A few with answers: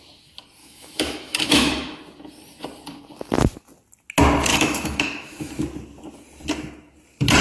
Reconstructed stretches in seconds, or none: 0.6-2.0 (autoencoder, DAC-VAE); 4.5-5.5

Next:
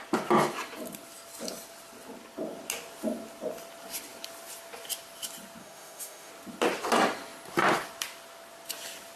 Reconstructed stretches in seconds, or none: 5.6-6.3 (autoencoder, DAC-VAE)

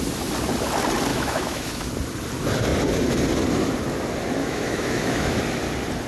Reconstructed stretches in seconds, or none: 1.1-1.9 (autoencoder, DAC-VAE); 4.4-5.4

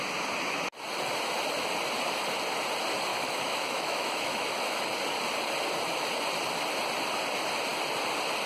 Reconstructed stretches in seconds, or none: 3.1-4.8 (autoencoder, DAC-VAE)